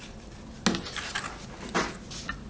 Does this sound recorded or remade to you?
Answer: recorded